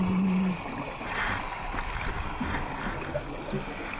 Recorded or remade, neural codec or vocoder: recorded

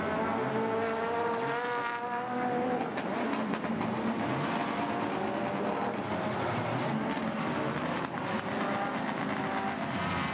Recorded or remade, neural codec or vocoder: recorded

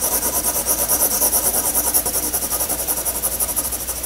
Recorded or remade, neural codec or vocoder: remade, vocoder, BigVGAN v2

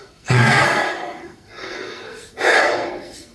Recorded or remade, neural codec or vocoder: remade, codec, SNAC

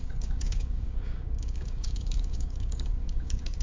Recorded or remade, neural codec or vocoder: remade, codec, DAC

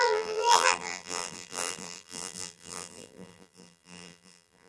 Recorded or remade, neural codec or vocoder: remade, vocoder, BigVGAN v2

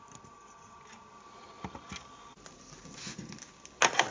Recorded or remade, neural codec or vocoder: recorded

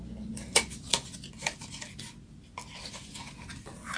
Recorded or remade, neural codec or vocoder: recorded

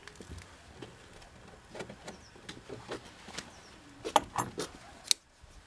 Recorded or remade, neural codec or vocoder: recorded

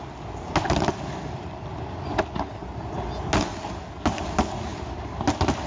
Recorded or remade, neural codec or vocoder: recorded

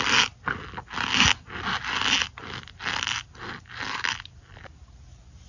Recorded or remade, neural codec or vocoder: recorded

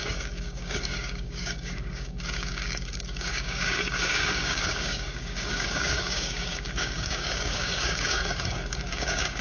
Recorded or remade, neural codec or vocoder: remade, codec, DAC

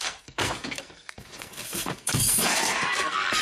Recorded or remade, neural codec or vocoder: remade, codec, SNAC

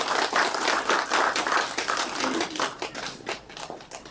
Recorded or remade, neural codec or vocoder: recorded